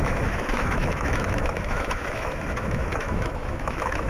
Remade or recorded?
remade